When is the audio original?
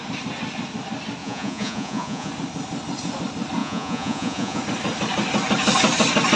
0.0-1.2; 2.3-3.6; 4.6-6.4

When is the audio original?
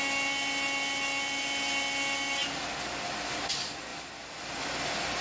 0.0-5.2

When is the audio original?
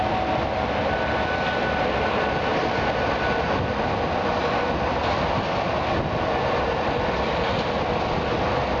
0.0-8.8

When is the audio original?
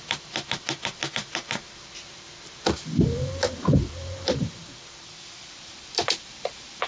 none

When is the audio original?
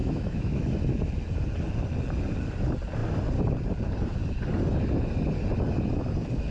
0.8-6.5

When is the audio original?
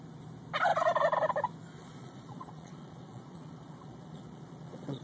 0.0-1.8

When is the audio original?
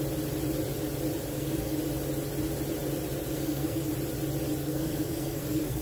0.0-1.3; 1.8-3.3; 3.9-4.6